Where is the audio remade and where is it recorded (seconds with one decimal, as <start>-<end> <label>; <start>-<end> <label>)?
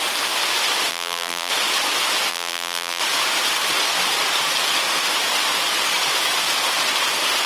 0.0-0.9 recorded; 0.9-1.5 remade; 1.5-2.3 recorded; 2.3-3.0 remade; 3.0-7.5 recorded